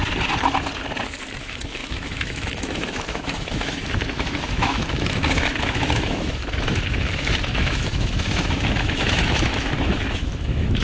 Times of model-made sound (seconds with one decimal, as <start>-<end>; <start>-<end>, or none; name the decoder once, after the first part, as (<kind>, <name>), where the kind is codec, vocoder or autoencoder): 1.4-10.8 (autoencoder, DAC-VAE)